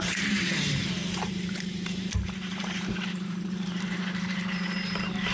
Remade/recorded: remade